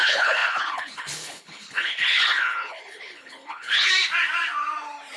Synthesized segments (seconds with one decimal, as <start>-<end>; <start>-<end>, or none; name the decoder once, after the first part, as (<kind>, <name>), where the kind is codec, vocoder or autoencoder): 0.0-3.9 (codec, HILCodec)